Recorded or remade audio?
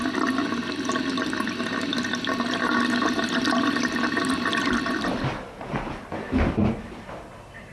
recorded